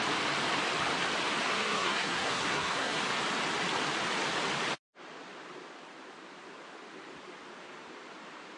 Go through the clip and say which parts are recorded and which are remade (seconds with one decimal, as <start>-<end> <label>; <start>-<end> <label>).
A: 0.0-1.5 recorded; 1.5-3.0 remade; 3.0-8.6 recorded